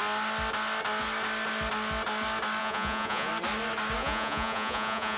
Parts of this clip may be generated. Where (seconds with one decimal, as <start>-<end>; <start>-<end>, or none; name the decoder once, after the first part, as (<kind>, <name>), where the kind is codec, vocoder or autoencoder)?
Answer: 2.6-3.3 (vocoder, Vocos); 4.0-5.2